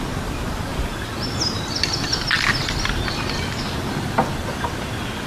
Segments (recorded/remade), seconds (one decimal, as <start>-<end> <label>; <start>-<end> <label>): 0.0-5.3 recorded